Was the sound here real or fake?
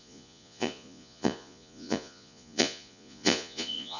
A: fake